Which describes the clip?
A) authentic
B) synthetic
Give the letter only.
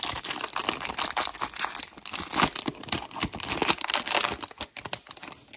A